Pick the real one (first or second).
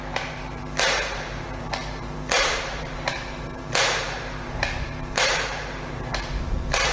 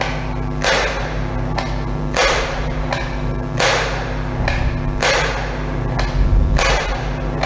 second